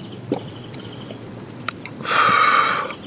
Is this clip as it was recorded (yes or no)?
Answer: yes